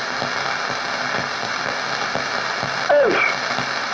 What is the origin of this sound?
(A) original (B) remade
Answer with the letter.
A